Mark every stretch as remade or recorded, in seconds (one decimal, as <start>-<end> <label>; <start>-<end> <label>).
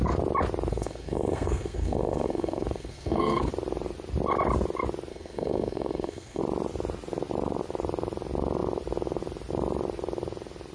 0.0-0.7 recorded; 0.7-3.5 remade; 3.5-5.1 recorded; 5.1-6.4 remade; 6.4-10.7 recorded